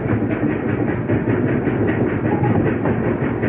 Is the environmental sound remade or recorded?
recorded